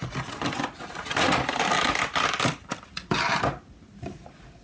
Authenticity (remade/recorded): recorded